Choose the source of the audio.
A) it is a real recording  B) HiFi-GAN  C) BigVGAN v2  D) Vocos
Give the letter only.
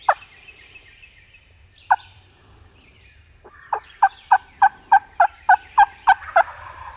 C